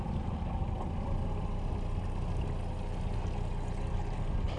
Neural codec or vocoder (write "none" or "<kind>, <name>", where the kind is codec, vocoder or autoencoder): none